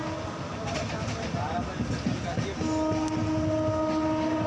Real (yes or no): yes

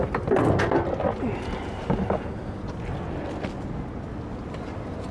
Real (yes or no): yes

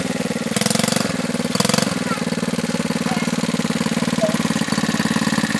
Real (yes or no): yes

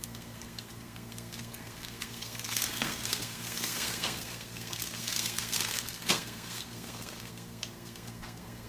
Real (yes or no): no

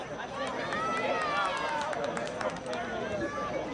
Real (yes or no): yes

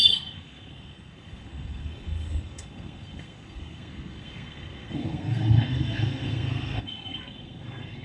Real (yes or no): no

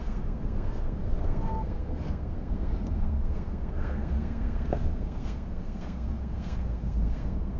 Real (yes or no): no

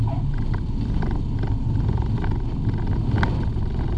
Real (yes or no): yes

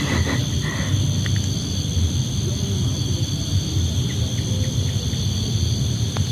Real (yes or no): yes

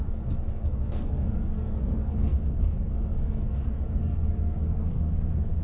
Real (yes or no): no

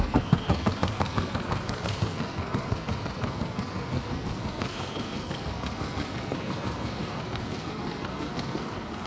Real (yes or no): no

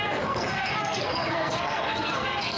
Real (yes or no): no